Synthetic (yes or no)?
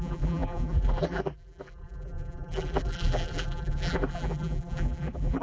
yes